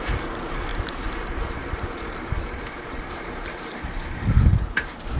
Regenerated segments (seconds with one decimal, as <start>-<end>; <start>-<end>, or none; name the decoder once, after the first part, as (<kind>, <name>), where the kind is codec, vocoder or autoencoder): 0.0-5.2 (vocoder, BigVGAN v2)